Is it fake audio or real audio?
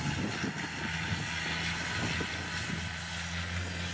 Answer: real